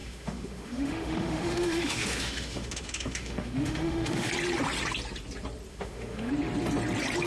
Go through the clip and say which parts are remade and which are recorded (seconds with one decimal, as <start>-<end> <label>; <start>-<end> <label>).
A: 0.0-4.3 remade; 4.3-5.7 recorded; 5.7-6.3 remade; 6.3-7.3 recorded